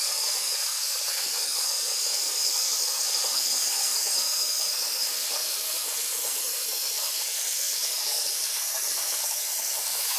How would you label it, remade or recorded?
remade